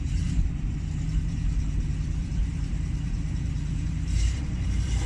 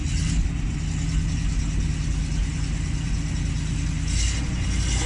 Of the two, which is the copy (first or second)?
first